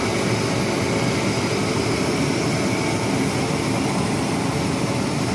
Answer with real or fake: real